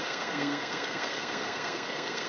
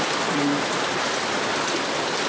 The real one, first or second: second